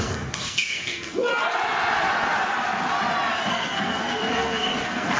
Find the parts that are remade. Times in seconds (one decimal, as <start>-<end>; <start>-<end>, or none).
0.0-1.3; 3.5-5.2